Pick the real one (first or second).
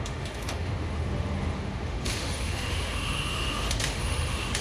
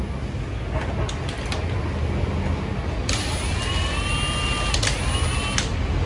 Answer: second